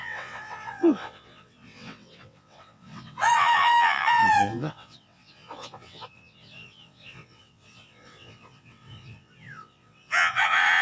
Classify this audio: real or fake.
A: fake